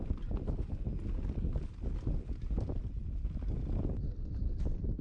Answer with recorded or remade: recorded